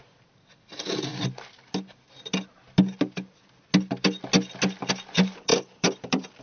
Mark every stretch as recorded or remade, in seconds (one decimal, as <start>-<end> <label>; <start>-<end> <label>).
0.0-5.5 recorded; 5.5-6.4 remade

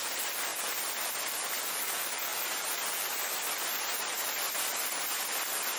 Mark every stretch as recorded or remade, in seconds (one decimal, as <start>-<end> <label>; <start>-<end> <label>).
0.0-2.3 recorded; 2.3-2.8 remade; 2.8-3.7 recorded; 3.7-4.4 remade; 4.4-5.8 recorded

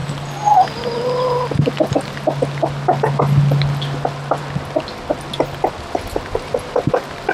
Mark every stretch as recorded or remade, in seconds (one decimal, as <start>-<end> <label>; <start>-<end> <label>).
0.0-7.3 recorded

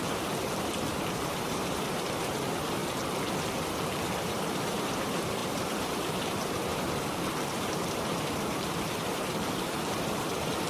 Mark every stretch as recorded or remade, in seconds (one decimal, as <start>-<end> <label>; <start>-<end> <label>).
0.0-0.9 recorded; 0.9-2.8 remade; 2.8-4.2 recorded; 4.2-10.7 remade

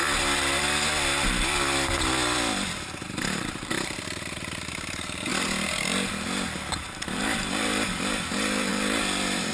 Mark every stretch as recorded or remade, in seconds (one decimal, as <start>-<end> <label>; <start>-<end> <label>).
0.0-2.9 recorded; 2.9-5.3 remade; 5.3-6.7 recorded; 6.7-9.5 remade

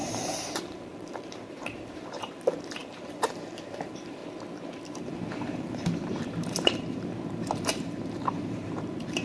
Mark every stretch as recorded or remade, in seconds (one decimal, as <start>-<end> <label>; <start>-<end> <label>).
0.0-4.2 remade; 4.2-5.0 recorded; 5.0-9.2 remade